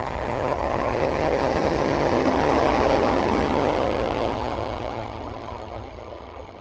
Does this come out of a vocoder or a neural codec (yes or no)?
yes